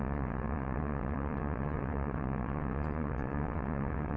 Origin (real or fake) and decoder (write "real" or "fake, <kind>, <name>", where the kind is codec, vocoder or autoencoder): fake, vocoder, WaveNeXt